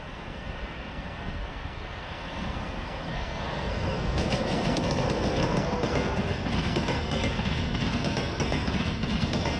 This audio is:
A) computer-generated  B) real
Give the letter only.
A